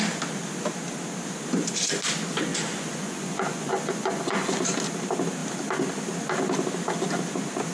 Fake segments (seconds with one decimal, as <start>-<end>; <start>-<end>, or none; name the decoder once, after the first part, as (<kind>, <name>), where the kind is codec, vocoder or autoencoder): 2.5-4.6 (vocoder, Vocos)